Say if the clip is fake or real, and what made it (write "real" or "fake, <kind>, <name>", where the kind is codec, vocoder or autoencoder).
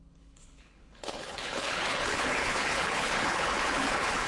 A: fake, codec, HILCodec